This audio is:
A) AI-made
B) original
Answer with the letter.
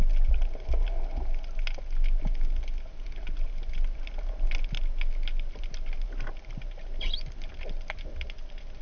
B